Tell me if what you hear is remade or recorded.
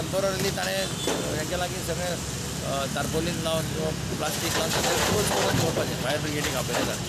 recorded